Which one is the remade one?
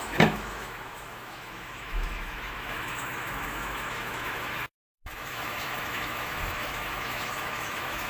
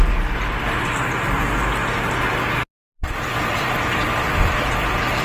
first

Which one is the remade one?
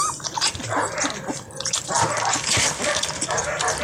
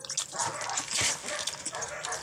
first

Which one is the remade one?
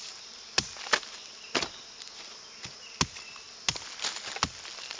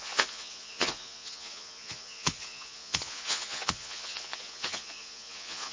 second